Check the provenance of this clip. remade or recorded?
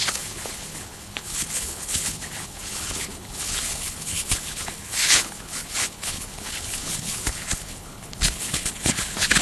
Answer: remade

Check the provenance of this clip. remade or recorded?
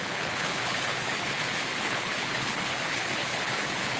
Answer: remade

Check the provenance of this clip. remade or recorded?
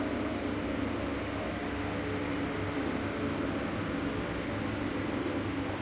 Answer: recorded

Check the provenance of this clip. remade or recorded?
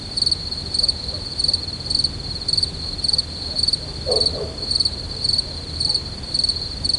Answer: recorded